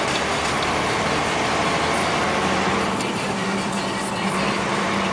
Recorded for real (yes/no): no